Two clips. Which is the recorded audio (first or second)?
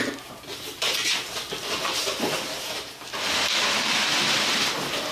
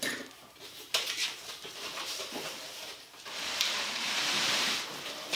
first